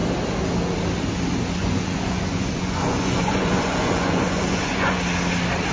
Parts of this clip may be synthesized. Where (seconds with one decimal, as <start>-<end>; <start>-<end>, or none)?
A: 1.6-5.0